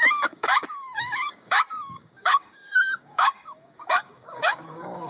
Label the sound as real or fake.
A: fake